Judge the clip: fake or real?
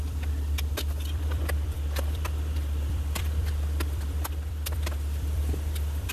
fake